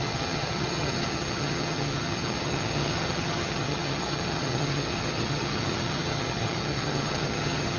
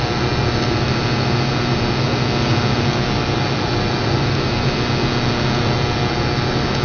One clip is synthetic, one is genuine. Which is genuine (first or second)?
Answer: second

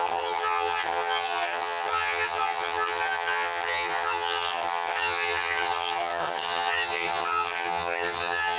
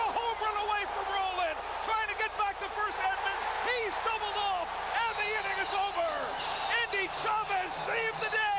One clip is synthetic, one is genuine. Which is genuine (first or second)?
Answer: second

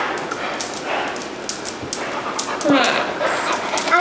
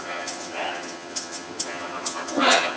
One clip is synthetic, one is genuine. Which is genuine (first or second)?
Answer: first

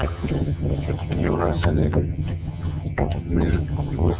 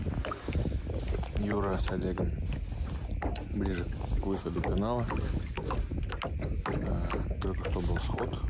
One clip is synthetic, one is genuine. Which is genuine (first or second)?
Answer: second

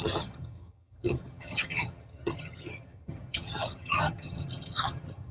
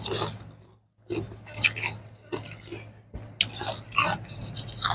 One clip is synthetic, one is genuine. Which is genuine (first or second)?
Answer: second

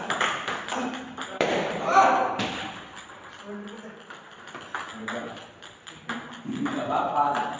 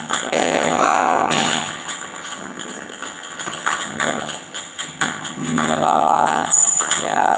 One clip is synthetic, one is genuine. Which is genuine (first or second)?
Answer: first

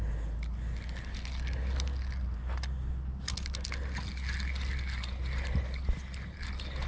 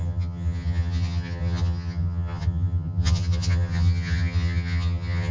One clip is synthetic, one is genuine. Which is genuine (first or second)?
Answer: first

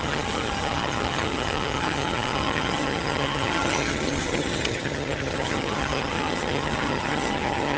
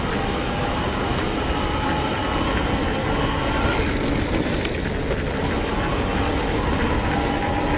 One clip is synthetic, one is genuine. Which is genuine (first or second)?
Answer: second